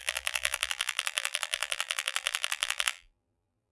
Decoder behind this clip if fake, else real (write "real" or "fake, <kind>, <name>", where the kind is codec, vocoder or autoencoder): fake, vocoder, BigVGAN v2